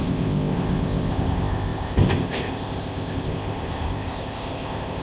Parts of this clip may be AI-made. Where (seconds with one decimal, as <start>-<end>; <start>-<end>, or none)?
0.0-5.0